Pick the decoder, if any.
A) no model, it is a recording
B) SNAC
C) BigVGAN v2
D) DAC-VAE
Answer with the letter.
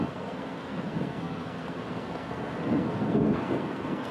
B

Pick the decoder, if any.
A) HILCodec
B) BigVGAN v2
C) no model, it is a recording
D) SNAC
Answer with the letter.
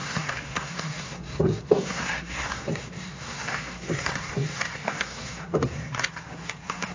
D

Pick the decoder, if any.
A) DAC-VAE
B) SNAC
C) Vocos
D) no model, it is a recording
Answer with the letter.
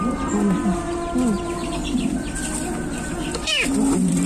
D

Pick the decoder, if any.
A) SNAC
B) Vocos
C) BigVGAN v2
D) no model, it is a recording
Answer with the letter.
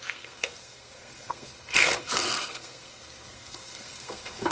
A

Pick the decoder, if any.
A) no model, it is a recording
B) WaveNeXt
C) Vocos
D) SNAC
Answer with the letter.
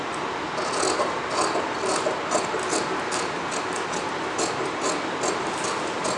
A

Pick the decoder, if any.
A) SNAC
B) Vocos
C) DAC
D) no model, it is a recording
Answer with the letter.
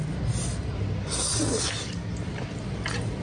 D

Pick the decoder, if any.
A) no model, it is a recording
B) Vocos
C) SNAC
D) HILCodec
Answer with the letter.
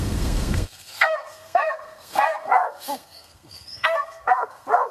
C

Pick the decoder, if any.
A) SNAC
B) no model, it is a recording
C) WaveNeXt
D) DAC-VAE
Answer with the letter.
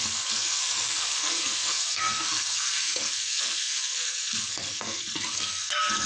A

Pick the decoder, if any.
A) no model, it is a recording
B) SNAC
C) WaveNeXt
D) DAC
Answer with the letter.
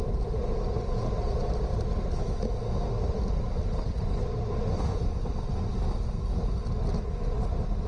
A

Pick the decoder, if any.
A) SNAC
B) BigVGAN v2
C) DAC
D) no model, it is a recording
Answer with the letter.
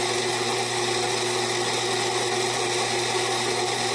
D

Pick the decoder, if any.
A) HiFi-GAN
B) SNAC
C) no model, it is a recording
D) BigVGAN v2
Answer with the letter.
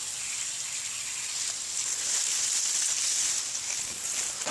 C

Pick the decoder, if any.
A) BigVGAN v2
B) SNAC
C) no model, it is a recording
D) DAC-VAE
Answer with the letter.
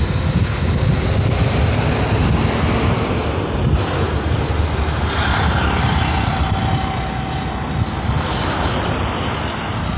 C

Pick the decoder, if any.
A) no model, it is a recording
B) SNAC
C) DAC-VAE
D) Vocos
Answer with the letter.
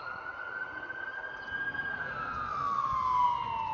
A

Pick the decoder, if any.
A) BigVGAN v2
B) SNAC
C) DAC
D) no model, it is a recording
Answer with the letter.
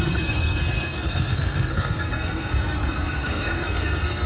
B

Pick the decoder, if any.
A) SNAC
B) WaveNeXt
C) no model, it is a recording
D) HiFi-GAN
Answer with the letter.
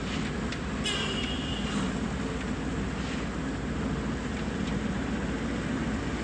C